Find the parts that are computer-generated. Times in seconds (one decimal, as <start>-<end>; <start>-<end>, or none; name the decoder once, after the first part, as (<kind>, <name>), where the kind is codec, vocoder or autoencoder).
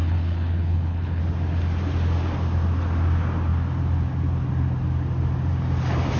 0.0-1.2 (codec, HILCodec)